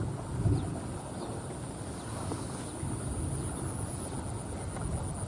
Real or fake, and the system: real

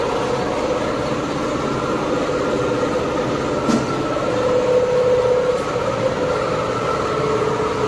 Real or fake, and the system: real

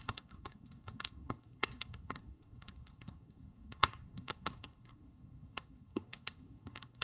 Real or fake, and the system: fake, codec, SNAC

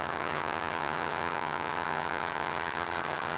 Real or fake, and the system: fake, vocoder, HiFi-GAN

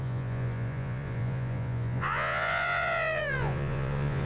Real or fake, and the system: fake, vocoder, Vocos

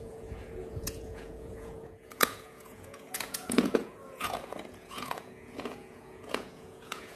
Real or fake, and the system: fake, vocoder, Vocos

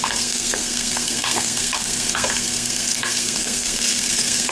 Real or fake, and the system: fake, codec, SNAC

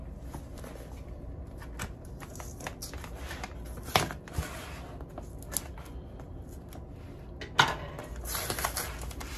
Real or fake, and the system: real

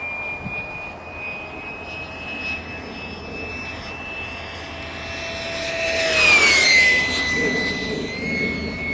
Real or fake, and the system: real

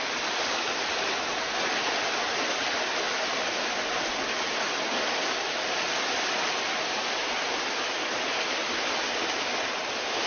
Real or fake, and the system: real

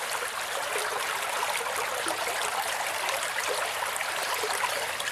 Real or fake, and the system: real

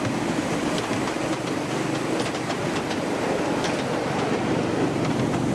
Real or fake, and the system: fake, vocoder, BigVGAN v2